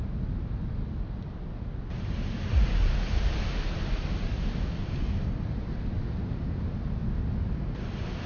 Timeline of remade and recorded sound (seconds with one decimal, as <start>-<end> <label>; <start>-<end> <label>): 0.0-8.3 recorded